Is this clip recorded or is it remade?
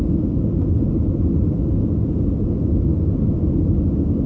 recorded